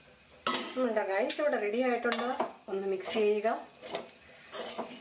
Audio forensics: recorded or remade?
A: recorded